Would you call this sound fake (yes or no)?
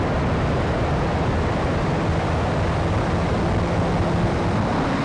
no